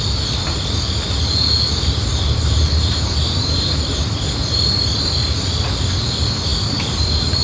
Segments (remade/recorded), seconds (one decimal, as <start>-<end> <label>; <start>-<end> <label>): 0.0-2.1 recorded; 2.1-4.1 remade; 4.1-6.5 recorded; 6.5-7.4 remade